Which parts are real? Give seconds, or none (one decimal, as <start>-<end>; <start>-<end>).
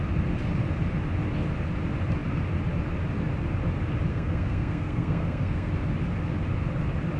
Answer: 0.0-4.1; 5.7-7.2